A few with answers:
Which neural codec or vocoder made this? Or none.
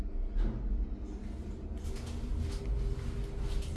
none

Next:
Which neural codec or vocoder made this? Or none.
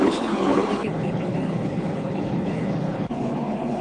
codec, HILCodec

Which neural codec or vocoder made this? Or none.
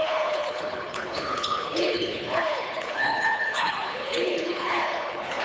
codec, HILCodec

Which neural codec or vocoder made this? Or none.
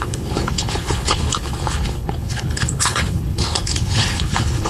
codec, HILCodec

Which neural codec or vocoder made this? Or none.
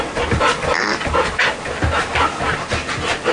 none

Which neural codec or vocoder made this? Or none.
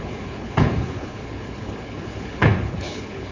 codec, HILCodec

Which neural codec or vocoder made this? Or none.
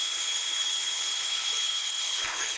codec, HILCodec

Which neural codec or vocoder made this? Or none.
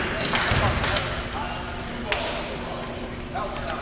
none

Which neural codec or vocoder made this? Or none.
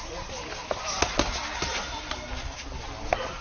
none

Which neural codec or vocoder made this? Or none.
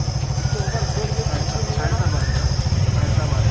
none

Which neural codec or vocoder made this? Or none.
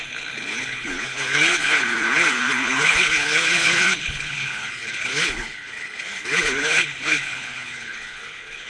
codec, HILCodec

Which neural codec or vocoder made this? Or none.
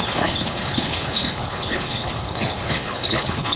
codec, HILCodec